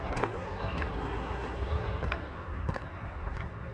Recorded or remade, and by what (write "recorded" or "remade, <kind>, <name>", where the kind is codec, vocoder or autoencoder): remade, codec, SNAC